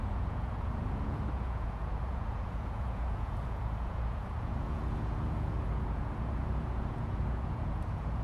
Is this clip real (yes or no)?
no